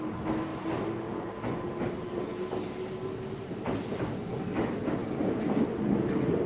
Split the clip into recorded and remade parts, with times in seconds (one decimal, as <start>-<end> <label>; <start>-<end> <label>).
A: 0.0-5.0 recorded; 5.0-5.6 remade; 5.6-6.5 recorded